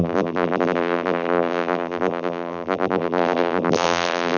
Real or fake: fake